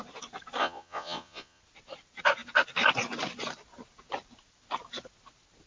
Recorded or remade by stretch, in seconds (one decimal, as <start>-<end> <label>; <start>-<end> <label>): 0.0-0.6 recorded; 0.6-1.6 remade; 1.6-5.7 recorded